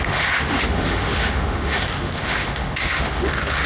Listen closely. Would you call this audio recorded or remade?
remade